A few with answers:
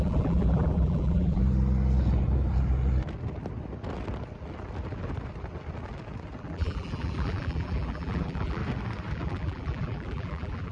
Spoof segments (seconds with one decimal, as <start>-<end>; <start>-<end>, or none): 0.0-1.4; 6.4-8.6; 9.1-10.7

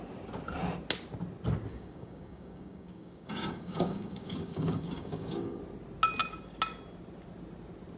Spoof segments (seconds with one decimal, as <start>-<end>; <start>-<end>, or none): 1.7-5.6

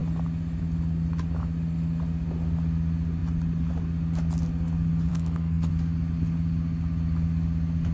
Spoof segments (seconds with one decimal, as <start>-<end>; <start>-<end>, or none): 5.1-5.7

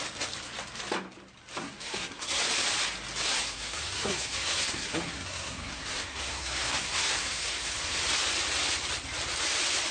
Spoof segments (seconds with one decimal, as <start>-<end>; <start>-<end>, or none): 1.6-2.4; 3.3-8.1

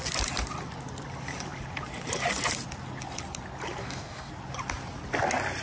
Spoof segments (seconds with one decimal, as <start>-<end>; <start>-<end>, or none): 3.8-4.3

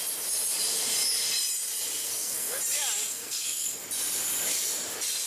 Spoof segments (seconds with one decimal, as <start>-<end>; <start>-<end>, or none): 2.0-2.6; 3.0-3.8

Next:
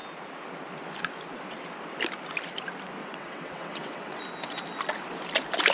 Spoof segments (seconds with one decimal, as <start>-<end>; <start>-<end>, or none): 3.0-4.2